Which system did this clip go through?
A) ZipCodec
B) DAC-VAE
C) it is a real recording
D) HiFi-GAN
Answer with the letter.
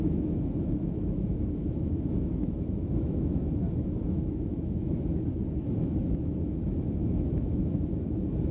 B